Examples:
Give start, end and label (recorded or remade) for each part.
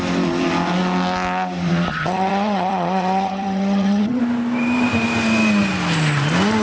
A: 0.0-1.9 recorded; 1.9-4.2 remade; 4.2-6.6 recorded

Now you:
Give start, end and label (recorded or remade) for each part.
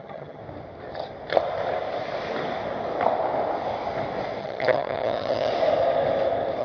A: 0.0-0.4 remade; 0.4-4.4 recorded; 4.4-5.5 remade; 5.5-6.6 recorded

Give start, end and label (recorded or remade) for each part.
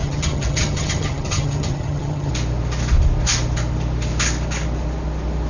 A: 0.0-2.3 remade; 2.3-5.5 recorded